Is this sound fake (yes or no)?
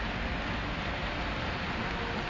no